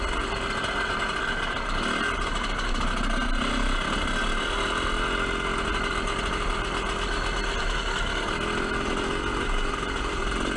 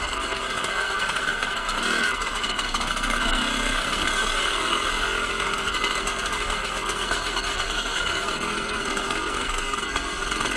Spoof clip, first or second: second